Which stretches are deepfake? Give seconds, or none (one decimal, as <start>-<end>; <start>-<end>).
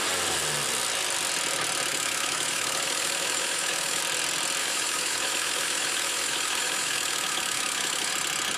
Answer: 1.9-4.0; 4.6-8.1